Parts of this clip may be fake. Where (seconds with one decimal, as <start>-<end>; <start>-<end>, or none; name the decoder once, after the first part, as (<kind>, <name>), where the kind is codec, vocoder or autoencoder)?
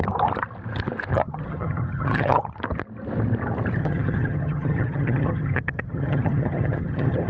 1.1-2.5 (vocoder, HiFi-GAN); 3.8-7.3